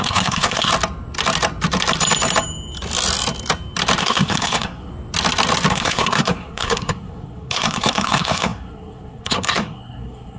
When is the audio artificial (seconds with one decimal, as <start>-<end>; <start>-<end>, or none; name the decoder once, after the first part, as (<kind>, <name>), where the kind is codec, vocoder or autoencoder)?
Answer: 0.0-0.7 (codec, SNAC); 4.0-4.9; 5.7-10.4